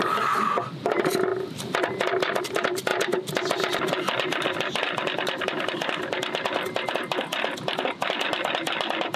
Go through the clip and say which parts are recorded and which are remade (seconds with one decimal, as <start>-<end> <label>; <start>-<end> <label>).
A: 0.0-9.2 recorded